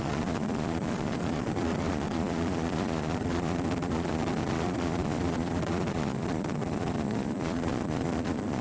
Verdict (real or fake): fake